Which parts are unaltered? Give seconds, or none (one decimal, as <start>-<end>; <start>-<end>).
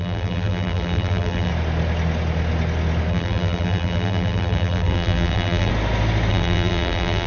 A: 1.5-3.1; 5.7-6.3